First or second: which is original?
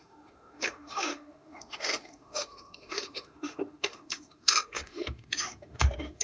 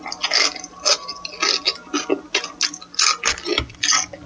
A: second